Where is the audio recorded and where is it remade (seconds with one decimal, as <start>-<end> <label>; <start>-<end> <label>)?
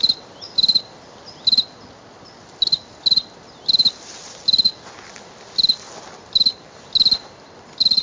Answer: 0.0-8.0 recorded